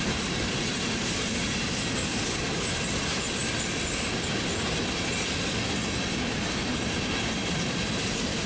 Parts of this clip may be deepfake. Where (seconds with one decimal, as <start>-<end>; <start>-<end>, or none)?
0.0-2.0; 6.8-8.5